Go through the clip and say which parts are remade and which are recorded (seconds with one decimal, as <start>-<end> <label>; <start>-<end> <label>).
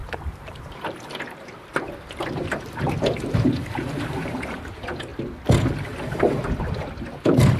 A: 0.0-5.1 remade; 5.1-7.1 recorded; 7.1-7.6 remade